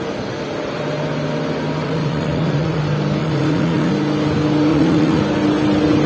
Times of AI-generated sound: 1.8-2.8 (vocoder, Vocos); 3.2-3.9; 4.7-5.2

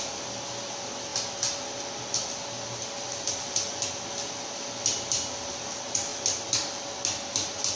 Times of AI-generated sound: none